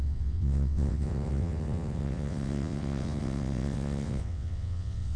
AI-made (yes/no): yes